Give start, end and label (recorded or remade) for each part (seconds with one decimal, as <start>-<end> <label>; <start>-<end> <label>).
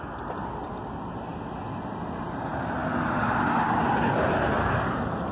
0.0-5.3 recorded